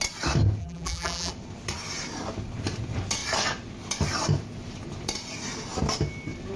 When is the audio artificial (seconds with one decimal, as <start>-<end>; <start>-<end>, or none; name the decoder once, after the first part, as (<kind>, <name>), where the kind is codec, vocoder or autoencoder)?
0.6-1.3 (vocoder, BigVGAN v2)